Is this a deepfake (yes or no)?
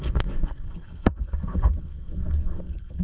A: yes